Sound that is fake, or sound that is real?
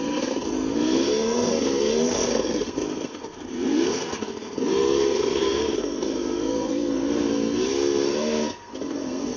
fake